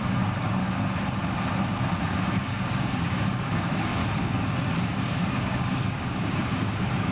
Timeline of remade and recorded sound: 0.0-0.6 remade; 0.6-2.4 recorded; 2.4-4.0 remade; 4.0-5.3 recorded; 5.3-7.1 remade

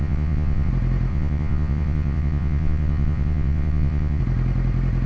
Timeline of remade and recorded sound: 0.0-0.7 remade; 0.7-1.1 recorded; 1.1-4.2 remade; 4.2-5.1 recorded